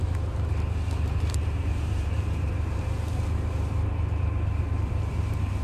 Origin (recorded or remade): remade